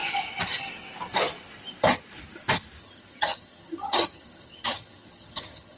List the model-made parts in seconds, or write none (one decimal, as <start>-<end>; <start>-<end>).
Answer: 2.8-5.8